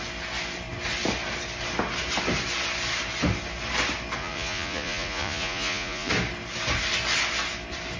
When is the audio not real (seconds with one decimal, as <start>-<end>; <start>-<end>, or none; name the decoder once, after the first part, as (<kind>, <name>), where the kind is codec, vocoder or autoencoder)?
4.2-6.1 (vocoder, Vocos)